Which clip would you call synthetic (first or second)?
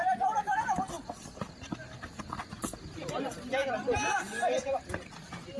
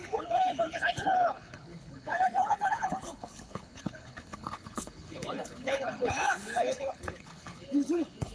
second